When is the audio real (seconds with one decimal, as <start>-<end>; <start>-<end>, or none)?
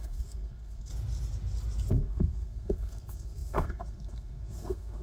0.9-1.9